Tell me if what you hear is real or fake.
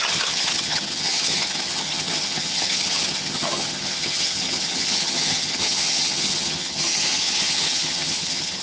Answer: fake